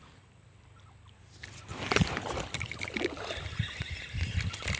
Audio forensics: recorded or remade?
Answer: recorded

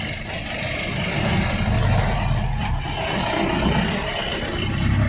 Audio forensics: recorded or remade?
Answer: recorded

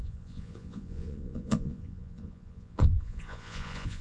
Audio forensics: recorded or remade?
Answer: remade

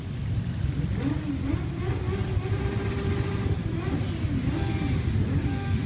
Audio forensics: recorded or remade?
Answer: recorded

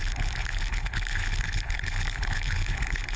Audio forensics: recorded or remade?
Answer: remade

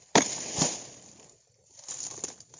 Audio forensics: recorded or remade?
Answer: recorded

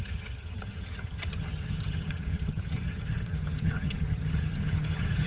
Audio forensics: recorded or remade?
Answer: remade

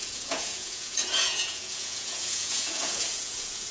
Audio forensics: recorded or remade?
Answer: remade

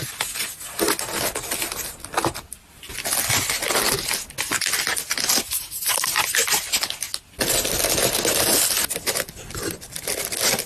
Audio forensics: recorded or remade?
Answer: recorded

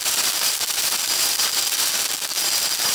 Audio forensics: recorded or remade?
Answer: remade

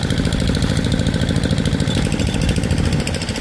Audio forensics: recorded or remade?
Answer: recorded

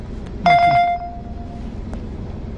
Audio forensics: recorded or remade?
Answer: recorded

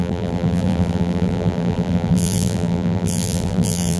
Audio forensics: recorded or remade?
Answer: remade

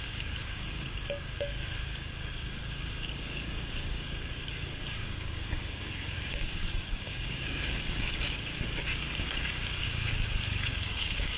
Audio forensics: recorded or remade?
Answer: remade